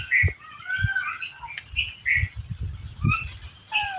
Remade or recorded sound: recorded